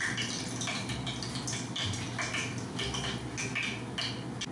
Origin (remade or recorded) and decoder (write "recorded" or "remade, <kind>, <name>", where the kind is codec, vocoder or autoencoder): recorded